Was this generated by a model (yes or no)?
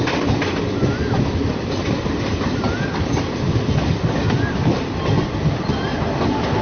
no